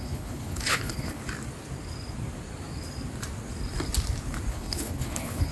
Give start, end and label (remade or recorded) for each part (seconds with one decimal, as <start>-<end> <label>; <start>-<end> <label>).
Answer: 0.0-1.2 remade; 1.2-4.5 recorded; 4.5-5.5 remade